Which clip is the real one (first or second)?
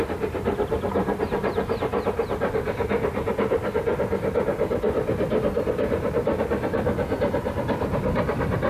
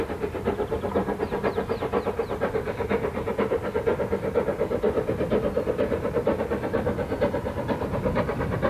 second